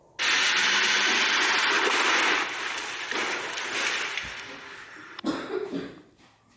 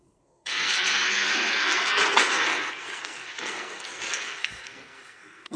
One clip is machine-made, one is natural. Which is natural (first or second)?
first